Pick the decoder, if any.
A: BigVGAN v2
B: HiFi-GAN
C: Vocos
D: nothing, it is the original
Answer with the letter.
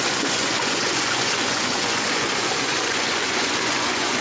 C